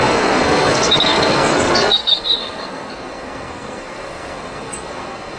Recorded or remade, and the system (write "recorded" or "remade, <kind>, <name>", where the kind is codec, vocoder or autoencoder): remade, codec, SNAC